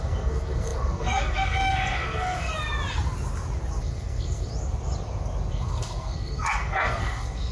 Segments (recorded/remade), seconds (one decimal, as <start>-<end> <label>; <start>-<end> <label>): 0.0-2.5 remade; 2.5-3.8 recorded; 3.8-4.5 remade; 4.5-5.5 recorded; 5.5-7.5 remade